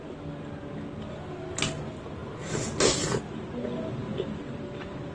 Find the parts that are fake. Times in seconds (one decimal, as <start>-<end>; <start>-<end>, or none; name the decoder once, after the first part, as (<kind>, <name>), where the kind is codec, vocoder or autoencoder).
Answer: none